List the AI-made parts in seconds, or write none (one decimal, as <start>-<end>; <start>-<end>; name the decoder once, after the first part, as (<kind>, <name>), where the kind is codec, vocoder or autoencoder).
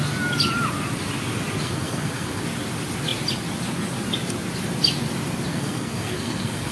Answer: 1.6-2.4 (codec, SNAC); 5.5-6.7